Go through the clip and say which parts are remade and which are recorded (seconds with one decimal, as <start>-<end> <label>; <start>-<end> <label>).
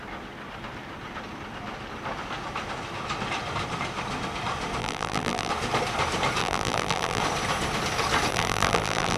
0.0-4.8 recorded; 4.8-5.5 remade; 5.5-6.4 recorded; 6.4-7.2 remade; 7.2-8.3 recorded; 8.3-9.2 remade